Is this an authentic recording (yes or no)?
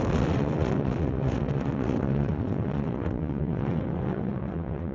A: no